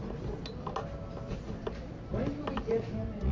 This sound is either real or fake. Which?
real